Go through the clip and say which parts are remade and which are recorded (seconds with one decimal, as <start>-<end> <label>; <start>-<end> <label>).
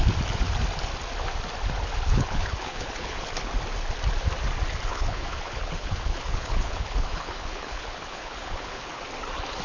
0.0-2.1 recorded; 2.1-3.5 remade; 3.5-4.9 recorded; 4.9-9.0 remade; 9.0-9.6 recorded